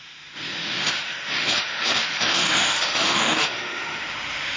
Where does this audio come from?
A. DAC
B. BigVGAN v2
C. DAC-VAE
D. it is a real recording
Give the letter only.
C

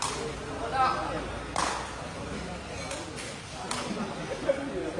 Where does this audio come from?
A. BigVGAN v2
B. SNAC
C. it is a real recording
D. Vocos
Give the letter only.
C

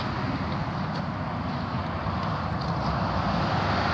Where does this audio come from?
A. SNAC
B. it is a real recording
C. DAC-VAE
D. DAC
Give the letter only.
B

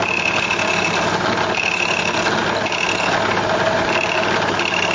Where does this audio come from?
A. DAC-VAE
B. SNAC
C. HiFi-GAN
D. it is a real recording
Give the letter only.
D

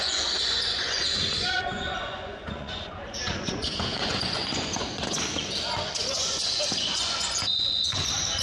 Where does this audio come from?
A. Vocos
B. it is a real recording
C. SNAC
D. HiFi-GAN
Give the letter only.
A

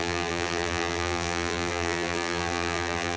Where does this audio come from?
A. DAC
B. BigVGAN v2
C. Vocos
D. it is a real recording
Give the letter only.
B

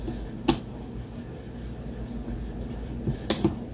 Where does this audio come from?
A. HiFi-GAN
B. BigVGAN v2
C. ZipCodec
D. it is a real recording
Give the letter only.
D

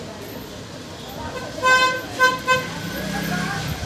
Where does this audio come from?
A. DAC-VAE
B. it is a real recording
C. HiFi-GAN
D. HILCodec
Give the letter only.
B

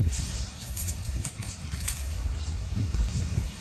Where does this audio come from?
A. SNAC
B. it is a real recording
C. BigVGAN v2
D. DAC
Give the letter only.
A